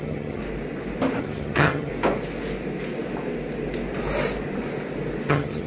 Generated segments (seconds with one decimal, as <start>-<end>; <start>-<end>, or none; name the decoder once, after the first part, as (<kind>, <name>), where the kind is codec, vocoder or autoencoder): 0.0-0.4 (vocoder, HiFi-GAN); 1.2-1.9; 5.3-5.7